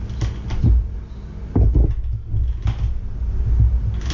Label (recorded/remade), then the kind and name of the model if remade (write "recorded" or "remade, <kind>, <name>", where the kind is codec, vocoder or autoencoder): recorded